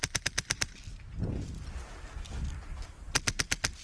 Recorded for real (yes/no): yes